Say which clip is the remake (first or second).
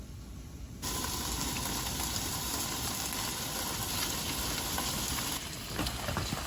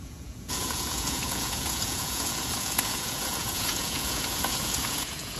second